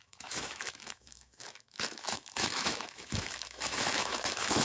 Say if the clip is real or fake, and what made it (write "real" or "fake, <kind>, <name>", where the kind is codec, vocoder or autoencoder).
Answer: fake, autoencoder, DAC-VAE